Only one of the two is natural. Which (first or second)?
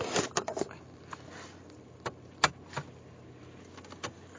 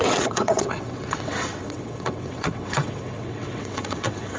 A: first